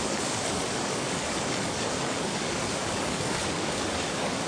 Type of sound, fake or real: fake